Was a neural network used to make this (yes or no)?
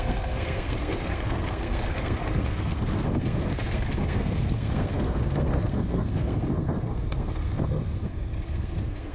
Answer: yes